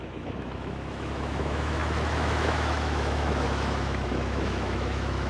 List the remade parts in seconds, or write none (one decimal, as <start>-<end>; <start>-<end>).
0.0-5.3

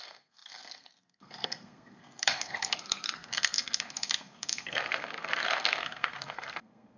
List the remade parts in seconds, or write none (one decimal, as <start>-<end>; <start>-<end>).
0.0-7.0

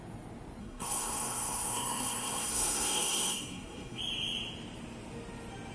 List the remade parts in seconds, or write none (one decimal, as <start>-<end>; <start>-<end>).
0.6-4.0

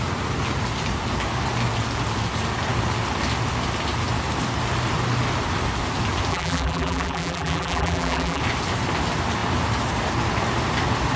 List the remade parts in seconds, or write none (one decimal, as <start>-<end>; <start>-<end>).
6.3-8.4

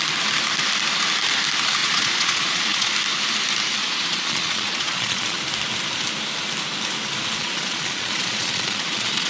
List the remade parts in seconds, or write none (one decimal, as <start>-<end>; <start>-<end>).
1.8-2.9; 3.8-5.4; 7.4-9.3